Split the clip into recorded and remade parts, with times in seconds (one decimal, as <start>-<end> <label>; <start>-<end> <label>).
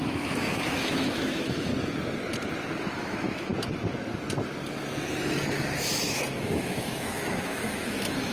0.0-1.7 remade; 1.7-3.0 recorded; 3.0-3.5 remade; 3.5-6.4 recorded; 6.4-8.3 remade